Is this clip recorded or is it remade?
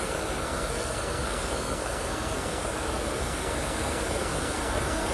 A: remade